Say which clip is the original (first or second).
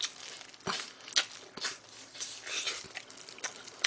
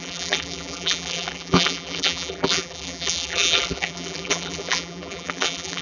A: first